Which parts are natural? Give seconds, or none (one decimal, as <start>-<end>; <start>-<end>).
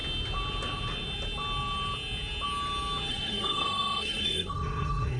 0.0-3.1